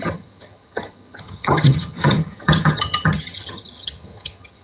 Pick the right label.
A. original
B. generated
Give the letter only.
B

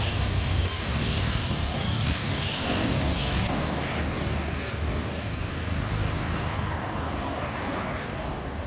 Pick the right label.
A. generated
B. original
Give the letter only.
A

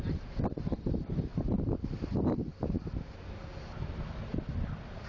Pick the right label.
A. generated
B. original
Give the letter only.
B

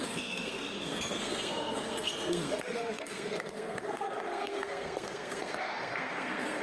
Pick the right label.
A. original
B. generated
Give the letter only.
B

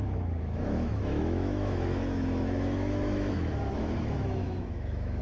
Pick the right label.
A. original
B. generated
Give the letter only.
B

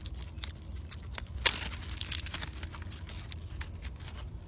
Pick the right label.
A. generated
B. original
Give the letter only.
B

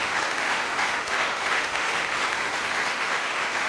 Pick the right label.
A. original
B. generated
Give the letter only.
B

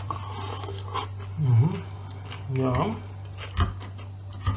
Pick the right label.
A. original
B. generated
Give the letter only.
A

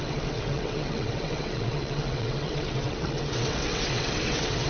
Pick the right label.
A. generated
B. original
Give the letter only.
A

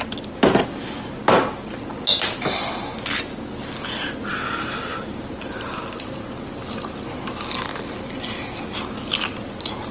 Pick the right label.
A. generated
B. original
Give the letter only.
B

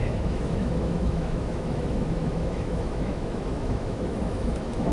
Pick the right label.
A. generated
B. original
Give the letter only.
A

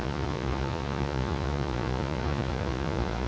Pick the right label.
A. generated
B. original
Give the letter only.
A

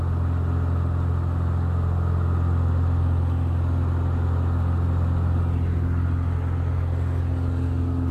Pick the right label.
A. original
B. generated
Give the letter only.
A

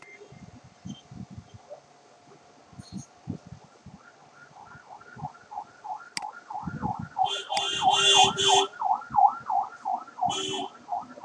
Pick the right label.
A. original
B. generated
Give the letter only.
A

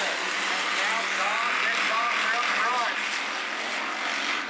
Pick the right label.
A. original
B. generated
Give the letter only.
A